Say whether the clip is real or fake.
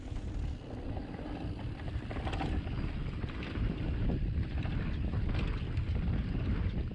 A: real